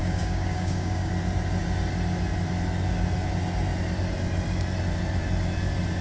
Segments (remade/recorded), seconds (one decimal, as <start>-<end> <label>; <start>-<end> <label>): 0.0-1.1 remade; 1.1-6.0 recorded